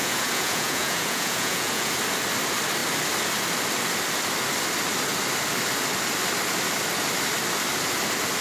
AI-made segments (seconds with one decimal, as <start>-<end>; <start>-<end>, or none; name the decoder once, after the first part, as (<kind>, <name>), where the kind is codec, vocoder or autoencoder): 0.0-1.9 (vocoder, Vocos)